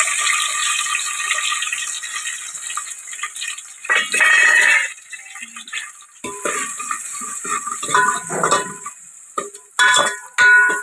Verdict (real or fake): real